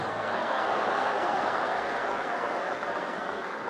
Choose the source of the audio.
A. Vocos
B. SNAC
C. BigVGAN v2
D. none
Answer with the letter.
B